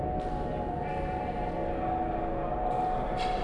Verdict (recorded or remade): recorded